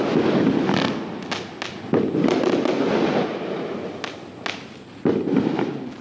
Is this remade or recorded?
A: recorded